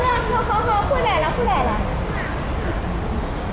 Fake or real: real